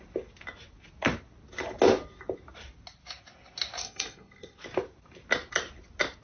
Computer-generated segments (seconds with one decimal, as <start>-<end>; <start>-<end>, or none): 3.8-4.6